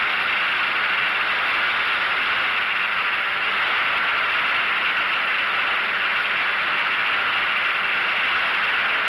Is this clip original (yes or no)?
yes